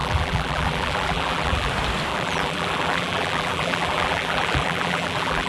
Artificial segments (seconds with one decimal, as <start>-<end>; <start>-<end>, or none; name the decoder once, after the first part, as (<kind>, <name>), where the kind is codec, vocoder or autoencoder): 0.0-1.7 (vocoder, BigVGAN v2); 2.1-5.5